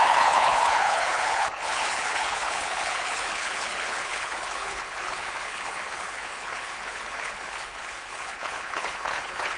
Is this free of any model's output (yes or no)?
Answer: no